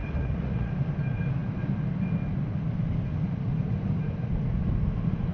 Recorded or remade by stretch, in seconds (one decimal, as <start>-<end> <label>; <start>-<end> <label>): 0.0-0.7 remade; 0.7-5.3 recorded